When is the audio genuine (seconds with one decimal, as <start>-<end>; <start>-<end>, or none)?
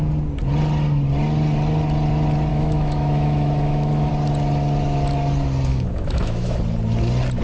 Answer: 0.0-2.5; 4.1-5.7; 6.6-7.4